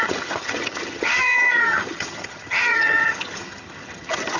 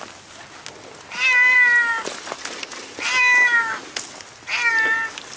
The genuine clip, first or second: second